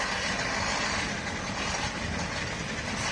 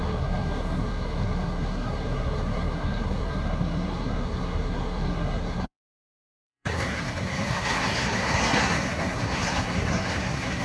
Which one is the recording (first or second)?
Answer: first